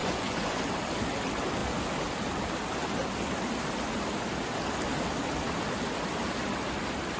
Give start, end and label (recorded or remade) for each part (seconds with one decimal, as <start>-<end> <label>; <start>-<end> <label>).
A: 0.0-0.6 remade; 0.6-7.2 recorded